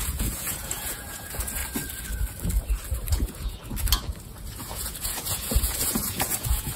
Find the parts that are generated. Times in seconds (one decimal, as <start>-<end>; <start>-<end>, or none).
0.0-1.6; 3.1-3.6; 4.5-6.8